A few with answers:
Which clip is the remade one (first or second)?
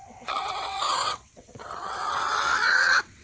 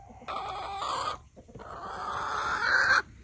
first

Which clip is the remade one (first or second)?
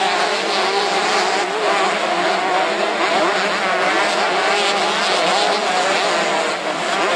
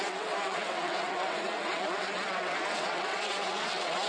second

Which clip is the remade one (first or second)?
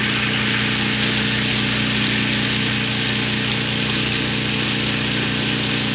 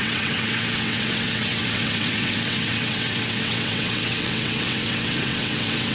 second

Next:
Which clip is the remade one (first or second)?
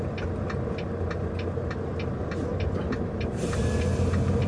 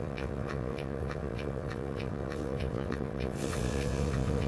second